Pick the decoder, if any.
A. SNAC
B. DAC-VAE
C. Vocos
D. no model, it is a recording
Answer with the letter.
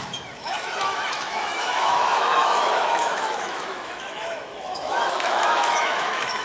B